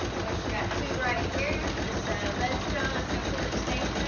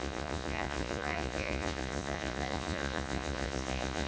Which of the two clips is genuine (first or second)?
first